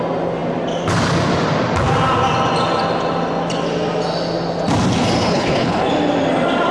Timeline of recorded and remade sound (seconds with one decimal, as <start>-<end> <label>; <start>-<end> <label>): 0.0-5.2 recorded; 5.2-5.9 remade; 5.9-6.7 recorded